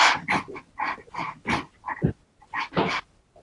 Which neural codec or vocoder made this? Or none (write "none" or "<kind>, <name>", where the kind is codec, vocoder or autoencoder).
none